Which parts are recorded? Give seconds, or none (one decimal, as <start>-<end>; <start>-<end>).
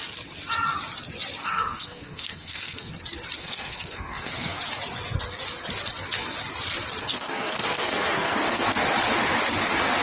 0.0-1.4; 2.9-3.4; 4.6-7.0; 8.7-10.0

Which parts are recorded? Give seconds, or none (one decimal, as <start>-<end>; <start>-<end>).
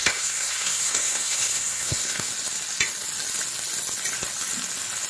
2.3-5.1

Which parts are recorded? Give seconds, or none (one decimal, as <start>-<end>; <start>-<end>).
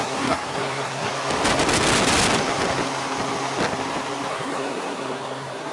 1.1-4.3